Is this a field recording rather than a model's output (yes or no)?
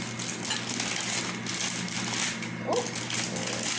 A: yes